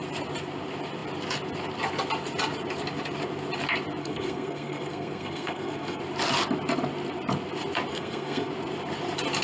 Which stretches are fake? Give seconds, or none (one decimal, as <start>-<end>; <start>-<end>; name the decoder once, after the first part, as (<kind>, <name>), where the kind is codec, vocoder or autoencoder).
4.0-6.0 (codec, SNAC); 7.9-8.5